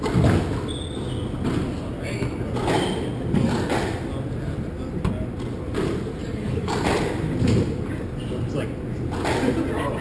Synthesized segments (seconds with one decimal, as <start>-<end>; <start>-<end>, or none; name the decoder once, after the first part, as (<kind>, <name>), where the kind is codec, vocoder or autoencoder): 6.2-6.7 (codec, DAC)